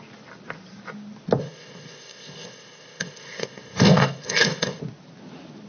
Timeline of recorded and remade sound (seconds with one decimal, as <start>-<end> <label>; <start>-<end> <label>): 0.0-1.4 recorded; 1.4-4.8 remade; 4.8-5.7 recorded